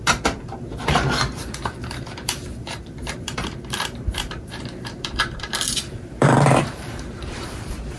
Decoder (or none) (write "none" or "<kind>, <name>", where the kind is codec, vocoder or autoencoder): vocoder, BigVGAN v2